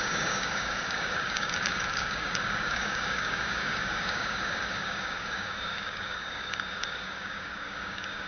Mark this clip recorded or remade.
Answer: remade